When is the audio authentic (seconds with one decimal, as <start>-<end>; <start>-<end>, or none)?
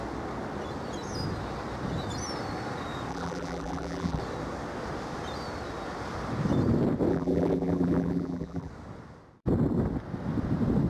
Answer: 0.0-3.1; 4.2-7.1; 8.7-10.9